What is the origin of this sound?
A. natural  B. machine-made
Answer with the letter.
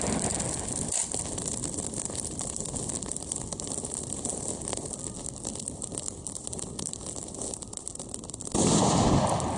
A